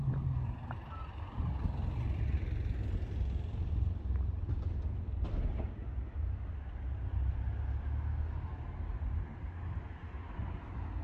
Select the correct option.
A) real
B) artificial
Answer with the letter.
A